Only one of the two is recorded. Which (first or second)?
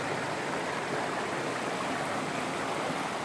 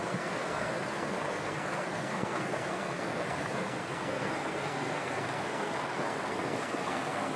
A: first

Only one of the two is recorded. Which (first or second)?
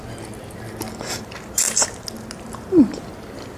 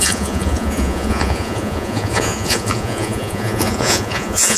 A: first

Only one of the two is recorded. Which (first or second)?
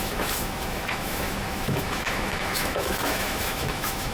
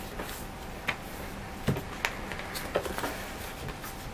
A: second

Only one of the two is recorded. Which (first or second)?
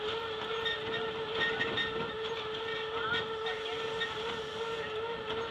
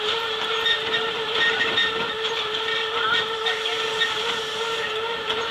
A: first